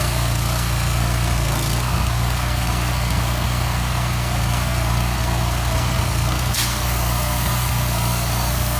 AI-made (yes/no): yes